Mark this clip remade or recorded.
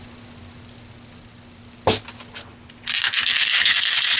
recorded